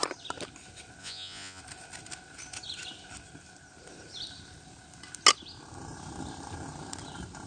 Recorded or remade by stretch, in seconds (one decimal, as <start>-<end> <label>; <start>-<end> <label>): 0.0-1.0 recorded; 1.0-1.6 remade; 1.6-7.5 recorded